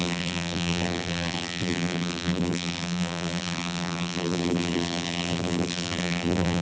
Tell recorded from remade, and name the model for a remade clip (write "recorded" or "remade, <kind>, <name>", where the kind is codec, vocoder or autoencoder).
remade, vocoder, BigVGAN v2